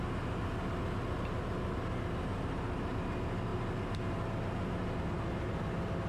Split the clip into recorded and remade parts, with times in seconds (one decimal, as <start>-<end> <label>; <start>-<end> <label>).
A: 0.0-6.1 recorded